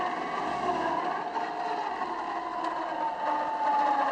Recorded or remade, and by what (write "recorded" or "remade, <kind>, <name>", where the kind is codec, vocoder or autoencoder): recorded